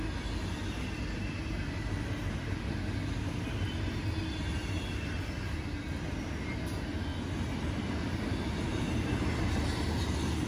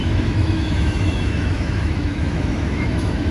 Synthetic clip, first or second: second